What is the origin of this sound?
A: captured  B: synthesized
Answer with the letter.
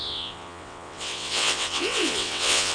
B